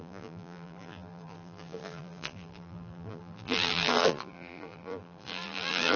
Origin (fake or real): fake